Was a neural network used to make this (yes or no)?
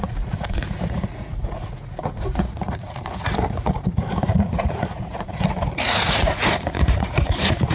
yes